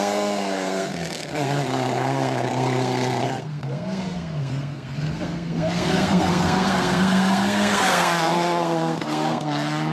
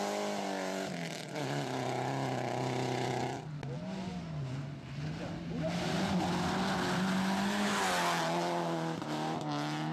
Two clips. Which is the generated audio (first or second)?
first